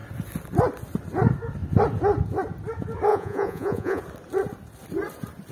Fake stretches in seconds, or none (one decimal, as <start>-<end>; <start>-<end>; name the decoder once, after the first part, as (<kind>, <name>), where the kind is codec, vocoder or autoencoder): 3.1-4.0 (vocoder, Vocos)